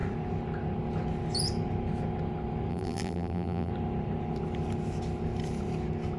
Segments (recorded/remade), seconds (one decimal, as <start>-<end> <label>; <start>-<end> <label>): 0.0-2.7 recorded; 2.7-3.7 remade; 3.7-6.2 recorded